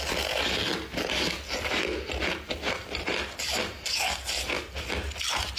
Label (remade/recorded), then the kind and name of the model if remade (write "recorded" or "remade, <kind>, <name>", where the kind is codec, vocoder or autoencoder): recorded